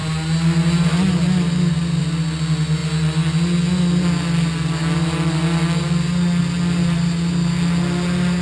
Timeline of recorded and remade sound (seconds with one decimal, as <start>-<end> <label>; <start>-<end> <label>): 0.0-8.4 recorded